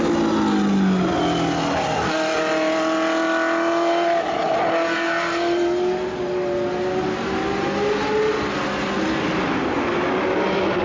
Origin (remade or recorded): recorded